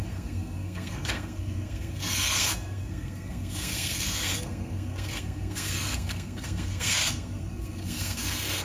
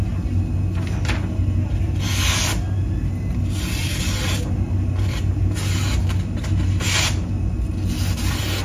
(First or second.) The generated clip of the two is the first